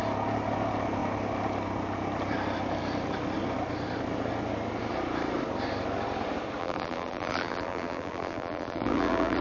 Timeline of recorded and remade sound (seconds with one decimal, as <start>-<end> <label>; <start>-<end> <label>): 0.0-6.6 recorded; 6.6-9.4 remade